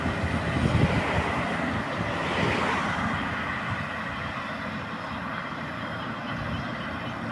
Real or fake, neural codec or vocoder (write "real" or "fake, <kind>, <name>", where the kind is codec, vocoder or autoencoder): real